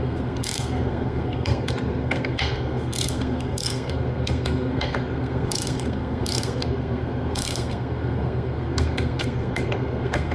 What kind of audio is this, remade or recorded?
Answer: remade